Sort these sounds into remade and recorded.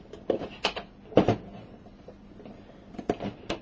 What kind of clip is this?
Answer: recorded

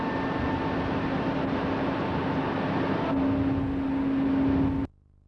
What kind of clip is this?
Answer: recorded